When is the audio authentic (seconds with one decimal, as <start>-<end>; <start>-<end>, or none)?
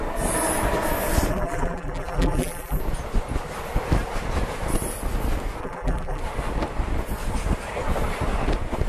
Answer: 0.0-1.3; 2.8-5.6; 6.2-8.9